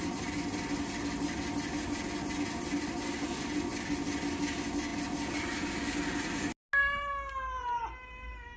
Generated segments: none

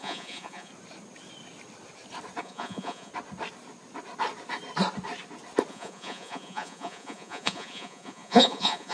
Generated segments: 0.0-0.7 (vocoder, Vocos); 2.4-3.1; 5.7-8.9

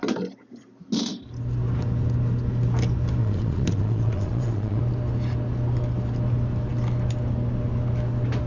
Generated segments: 3.2-4.8 (vocoder, Vocos)

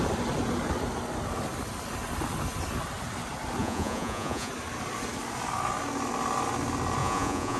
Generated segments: 3.6-4.5 (vocoder, Vocos); 7.0-7.6

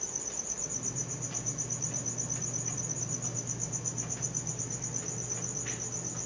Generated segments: none

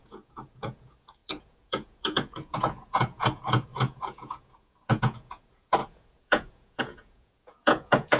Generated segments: 0.0-8.2 (vocoder, Vocos)

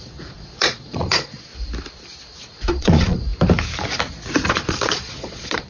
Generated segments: 0.0-1.5 (vocoder, Vocos); 2.7-3.3; 4.5-5.7